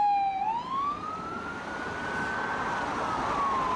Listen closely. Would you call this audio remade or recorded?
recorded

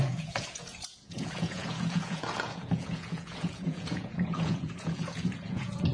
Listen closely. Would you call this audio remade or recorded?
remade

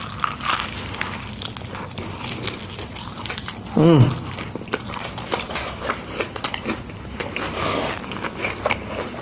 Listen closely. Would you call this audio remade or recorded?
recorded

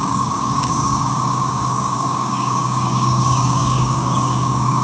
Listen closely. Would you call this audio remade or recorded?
remade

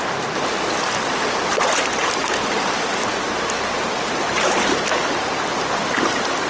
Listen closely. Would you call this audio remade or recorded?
recorded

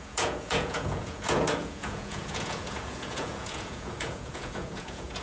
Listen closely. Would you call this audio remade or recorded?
remade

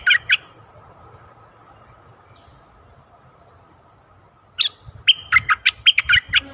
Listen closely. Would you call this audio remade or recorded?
recorded